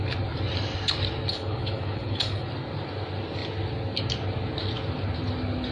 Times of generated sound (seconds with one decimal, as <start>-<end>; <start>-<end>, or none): 1.3-2.5